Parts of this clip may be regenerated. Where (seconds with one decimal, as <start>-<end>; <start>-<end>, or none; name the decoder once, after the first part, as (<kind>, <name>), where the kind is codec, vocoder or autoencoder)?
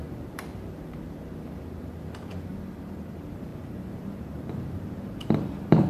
0.0-5.9 (vocoder, BigVGAN v2)